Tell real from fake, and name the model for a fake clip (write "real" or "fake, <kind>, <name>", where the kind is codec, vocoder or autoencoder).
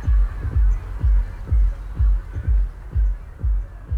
real